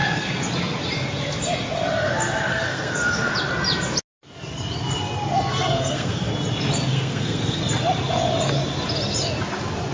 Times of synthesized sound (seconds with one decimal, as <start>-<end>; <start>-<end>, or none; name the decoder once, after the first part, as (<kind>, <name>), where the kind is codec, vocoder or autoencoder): 2.5-3.3 (codec, SNAC); 5.5-6.3; 6.9-7.6